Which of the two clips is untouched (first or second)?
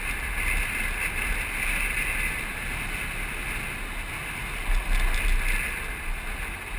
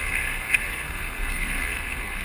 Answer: first